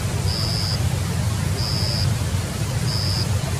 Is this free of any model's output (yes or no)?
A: yes